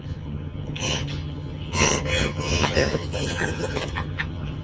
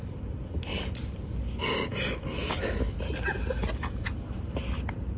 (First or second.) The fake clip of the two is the first